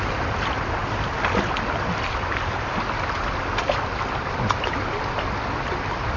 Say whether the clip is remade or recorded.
recorded